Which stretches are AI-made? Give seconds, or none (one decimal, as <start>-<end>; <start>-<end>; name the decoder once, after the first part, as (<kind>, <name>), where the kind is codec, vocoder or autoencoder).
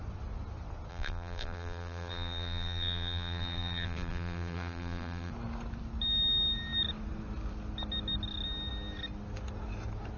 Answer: 0.9-5.3 (vocoder, BigVGAN v2)